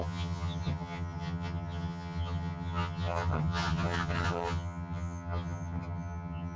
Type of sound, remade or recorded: remade